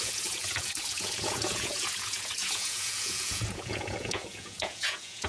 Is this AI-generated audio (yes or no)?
yes